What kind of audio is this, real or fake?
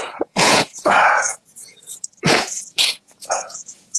fake